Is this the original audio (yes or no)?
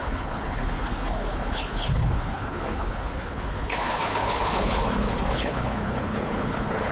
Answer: no